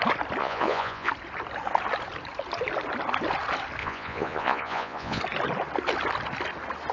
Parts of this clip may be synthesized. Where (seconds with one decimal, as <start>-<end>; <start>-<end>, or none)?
0.4-1.1; 3.8-5.2